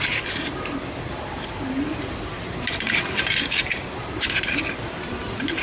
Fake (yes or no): yes